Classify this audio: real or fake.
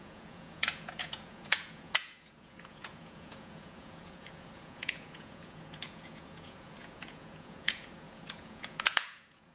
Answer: fake